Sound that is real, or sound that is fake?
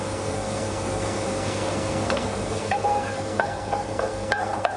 fake